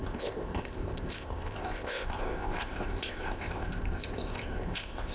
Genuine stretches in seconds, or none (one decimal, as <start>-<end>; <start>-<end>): none